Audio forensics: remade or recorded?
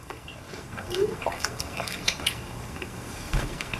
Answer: remade